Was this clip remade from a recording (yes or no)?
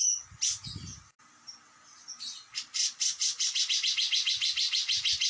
no